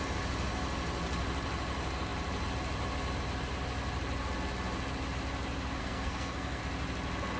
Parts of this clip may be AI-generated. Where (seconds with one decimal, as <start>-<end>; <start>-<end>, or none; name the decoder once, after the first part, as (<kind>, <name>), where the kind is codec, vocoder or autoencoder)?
5.8-6.6 (codec, SNAC)